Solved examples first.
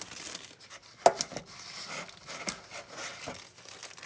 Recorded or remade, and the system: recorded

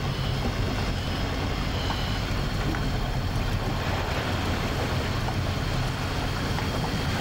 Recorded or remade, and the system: recorded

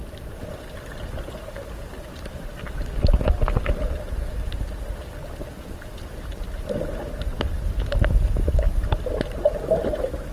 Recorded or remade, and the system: recorded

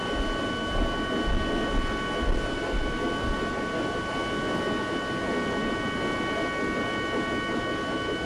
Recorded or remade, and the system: recorded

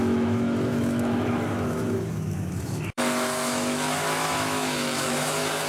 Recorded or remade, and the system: remade, autoencoder, DAC-VAE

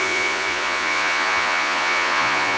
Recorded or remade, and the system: remade, vocoder, Vocos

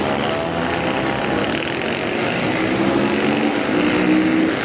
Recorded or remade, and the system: recorded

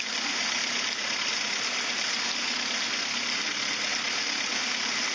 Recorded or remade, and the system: recorded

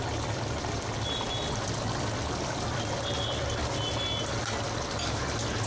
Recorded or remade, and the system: recorded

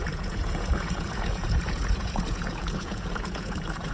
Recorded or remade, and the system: remade, vocoder, Vocos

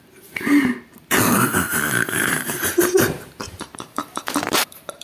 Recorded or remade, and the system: remade, vocoder, BigVGAN v2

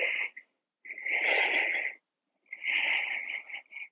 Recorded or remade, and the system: recorded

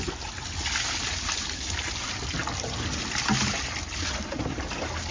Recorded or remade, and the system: recorded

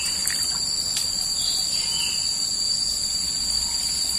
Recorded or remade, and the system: recorded